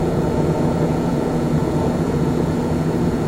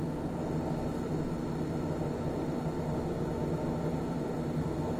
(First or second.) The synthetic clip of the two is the first